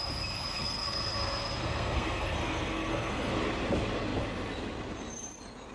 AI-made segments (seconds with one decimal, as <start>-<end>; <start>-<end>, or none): 0.6-3.3